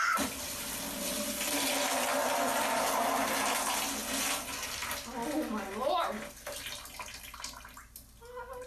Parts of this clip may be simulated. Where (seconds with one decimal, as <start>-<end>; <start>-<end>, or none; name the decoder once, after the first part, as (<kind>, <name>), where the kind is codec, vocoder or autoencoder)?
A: none